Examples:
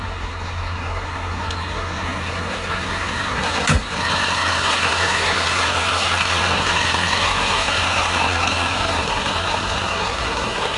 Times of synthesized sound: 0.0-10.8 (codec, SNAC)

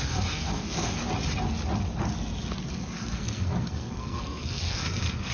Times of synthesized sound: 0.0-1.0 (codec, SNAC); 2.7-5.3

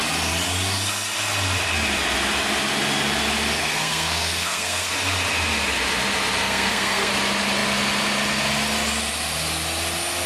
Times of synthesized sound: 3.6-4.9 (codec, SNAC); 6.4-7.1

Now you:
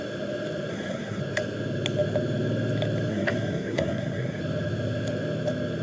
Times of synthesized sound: 0.7-1.2 (codec, SNAC); 3.1-4.4

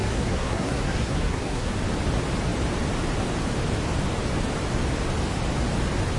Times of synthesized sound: 0.0-1.7 (codec, SNAC)